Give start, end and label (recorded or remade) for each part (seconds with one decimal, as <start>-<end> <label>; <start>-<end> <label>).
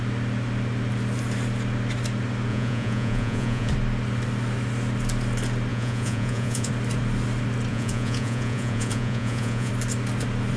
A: 0.0-2.5 recorded; 2.5-3.7 remade; 3.7-5.7 recorded; 5.7-6.7 remade; 6.7-7.7 recorded; 7.7-9.7 remade; 9.7-10.6 recorded